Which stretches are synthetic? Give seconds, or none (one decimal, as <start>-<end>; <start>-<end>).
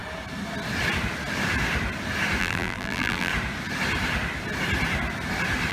2.4-3.3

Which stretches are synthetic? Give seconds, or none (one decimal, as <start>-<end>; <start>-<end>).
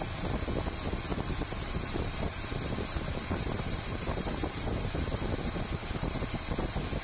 1.1-5.3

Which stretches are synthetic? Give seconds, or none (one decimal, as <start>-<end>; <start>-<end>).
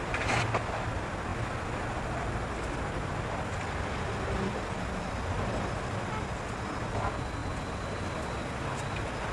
0.0-0.7; 7.4-8.1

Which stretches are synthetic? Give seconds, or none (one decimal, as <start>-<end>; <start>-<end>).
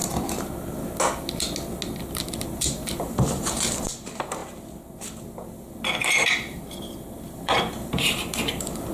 2.1-4.4; 6.0-8.9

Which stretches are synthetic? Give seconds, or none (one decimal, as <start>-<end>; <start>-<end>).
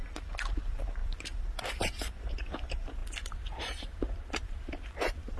0.5-5.4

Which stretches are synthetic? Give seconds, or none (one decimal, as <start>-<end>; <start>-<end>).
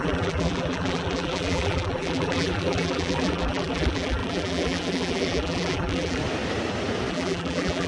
0.0-6.2; 7.1-7.9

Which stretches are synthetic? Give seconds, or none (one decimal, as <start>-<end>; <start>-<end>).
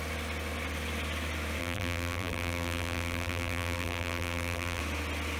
1.6-4.8